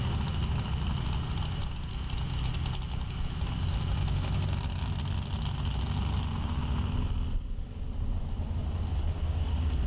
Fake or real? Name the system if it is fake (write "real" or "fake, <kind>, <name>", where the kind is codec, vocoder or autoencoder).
real